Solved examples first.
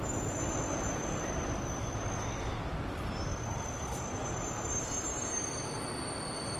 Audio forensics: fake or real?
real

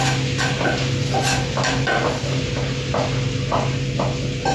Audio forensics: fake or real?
real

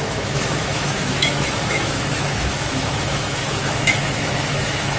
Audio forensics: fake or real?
fake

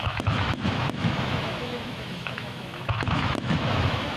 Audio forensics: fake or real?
fake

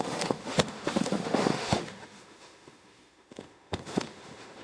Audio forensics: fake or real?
fake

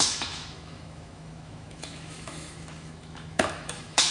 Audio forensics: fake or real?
fake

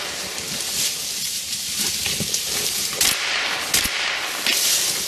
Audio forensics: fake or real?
real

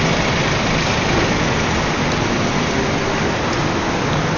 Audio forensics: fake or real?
real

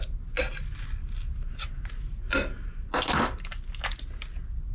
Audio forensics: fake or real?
real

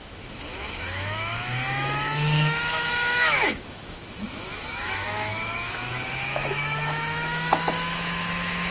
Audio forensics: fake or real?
fake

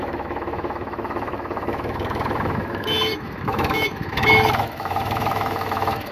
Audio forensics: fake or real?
fake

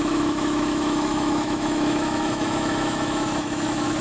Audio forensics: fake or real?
fake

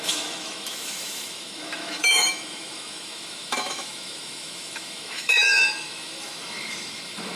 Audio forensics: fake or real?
fake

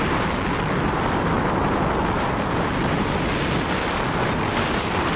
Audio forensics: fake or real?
real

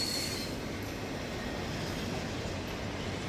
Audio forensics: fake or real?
real